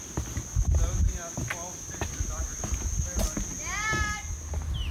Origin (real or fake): real